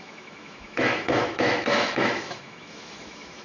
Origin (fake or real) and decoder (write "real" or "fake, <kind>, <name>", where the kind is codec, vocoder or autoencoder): fake, autoencoder, DAC-VAE